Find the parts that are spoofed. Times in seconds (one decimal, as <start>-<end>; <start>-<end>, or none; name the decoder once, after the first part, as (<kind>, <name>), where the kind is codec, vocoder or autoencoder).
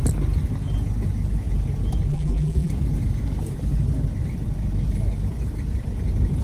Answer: 2.1-2.7 (vocoder, BigVGAN v2)